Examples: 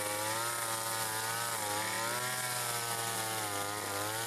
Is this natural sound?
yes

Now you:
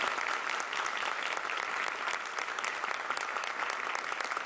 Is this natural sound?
yes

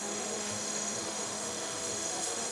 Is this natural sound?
no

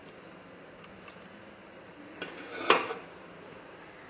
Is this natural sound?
yes